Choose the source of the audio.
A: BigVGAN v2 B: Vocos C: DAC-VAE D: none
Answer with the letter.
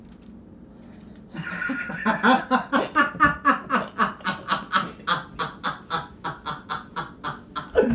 D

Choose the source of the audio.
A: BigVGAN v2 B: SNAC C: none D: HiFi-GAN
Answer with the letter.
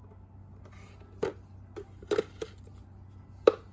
C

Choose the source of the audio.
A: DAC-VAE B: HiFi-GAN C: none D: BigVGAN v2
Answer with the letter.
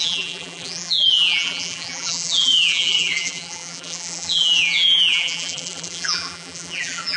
D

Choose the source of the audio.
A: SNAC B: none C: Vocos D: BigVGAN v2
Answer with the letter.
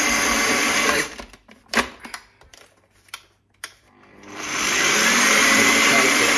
D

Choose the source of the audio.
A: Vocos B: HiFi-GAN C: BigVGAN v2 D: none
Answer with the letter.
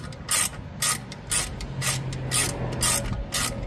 D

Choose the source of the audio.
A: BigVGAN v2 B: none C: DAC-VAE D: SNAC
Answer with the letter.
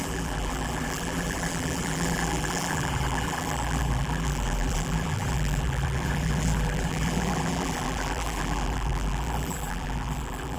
A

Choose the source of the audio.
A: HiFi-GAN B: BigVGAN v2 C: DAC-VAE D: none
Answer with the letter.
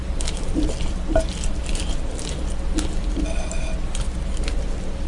D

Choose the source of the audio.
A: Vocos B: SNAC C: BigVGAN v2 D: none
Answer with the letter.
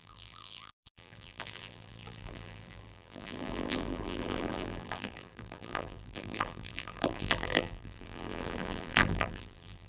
C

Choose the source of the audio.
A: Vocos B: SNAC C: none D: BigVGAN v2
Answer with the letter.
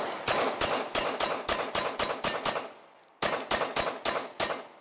C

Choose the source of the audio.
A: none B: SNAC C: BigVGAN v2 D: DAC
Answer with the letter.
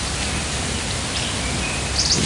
A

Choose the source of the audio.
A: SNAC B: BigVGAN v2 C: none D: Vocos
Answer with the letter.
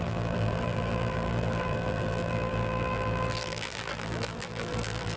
B